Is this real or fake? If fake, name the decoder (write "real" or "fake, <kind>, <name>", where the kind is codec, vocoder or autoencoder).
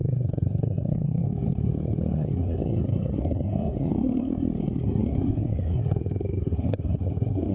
fake, codec, SNAC